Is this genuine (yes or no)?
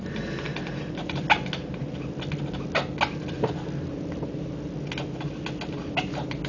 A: yes